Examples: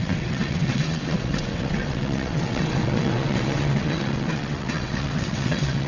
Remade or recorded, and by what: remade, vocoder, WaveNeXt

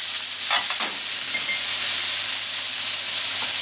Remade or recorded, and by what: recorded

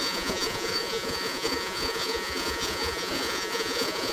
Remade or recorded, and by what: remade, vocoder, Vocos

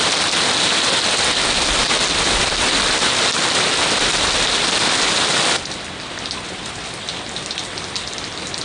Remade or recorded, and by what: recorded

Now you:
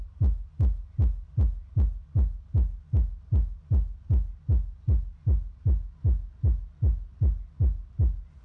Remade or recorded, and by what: recorded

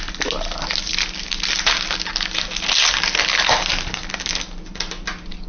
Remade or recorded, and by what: recorded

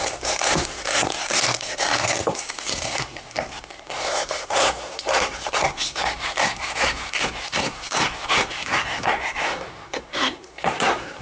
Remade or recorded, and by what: remade, codec, SNAC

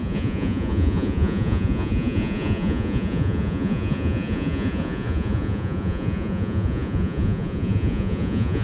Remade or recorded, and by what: remade, vocoder, Vocos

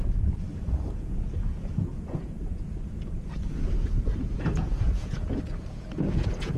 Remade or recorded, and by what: remade, vocoder, Vocos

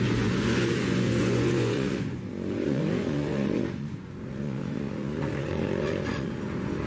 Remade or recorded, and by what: remade, vocoder, Vocos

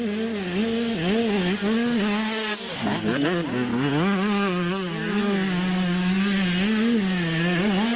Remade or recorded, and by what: recorded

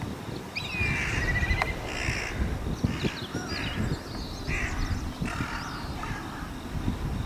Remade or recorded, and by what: recorded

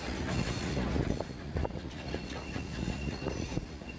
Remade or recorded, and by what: remade, vocoder, Vocos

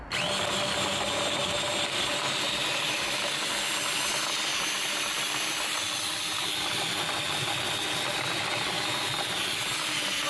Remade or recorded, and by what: recorded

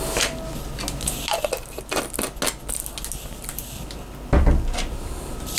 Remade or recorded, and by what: recorded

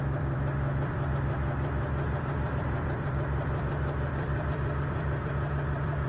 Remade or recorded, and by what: remade, vocoder, BigVGAN v2